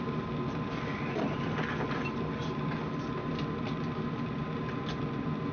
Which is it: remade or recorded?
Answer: recorded